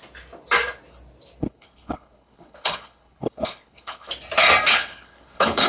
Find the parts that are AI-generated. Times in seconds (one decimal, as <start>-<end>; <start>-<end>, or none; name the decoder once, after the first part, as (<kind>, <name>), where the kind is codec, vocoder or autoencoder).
1.4-4.1 (codec, HILCodec); 4.7-5.7